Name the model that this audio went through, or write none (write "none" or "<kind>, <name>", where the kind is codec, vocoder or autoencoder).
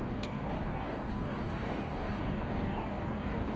codec, DAC